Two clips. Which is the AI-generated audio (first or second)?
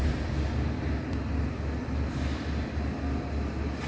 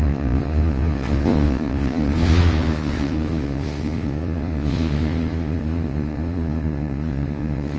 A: second